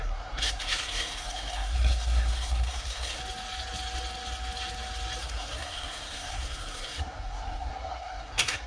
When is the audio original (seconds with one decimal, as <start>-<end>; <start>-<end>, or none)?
3.2-5.2